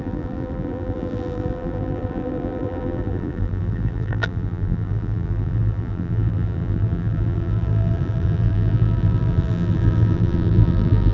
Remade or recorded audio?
remade